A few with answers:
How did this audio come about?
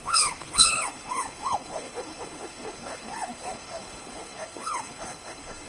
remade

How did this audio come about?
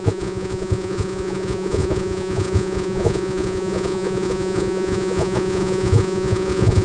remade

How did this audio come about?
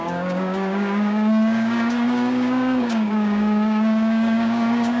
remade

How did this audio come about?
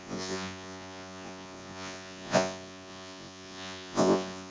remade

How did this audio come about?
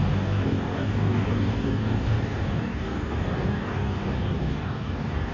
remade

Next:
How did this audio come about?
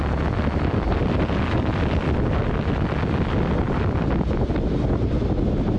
recorded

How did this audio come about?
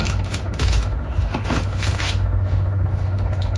remade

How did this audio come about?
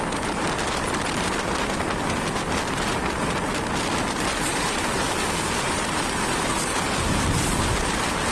recorded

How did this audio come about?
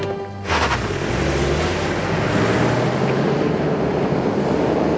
recorded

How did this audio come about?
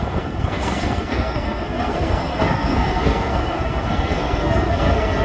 remade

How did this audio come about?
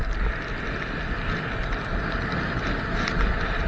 recorded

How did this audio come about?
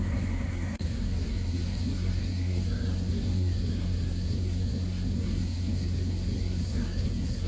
remade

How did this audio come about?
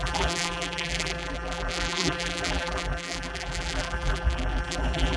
remade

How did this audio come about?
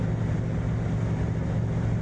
recorded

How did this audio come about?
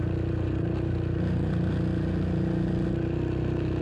recorded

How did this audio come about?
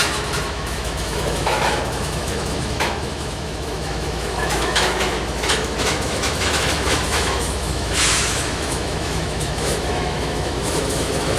remade